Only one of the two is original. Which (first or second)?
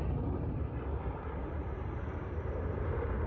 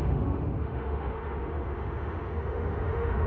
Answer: first